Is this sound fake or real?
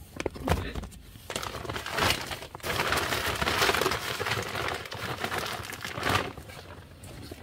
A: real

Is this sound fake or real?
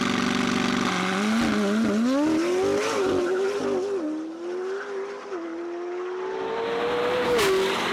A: real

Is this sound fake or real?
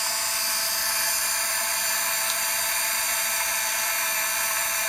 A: real